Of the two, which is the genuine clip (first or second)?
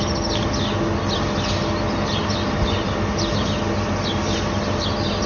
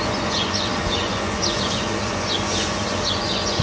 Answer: first